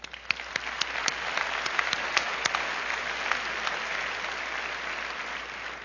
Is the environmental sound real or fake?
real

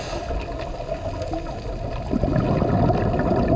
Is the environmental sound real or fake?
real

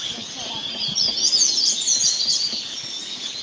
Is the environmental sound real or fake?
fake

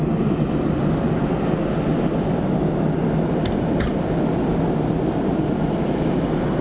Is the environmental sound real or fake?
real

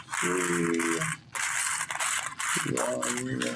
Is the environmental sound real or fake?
real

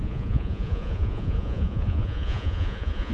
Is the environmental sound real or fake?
fake